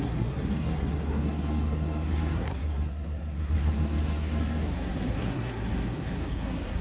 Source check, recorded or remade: remade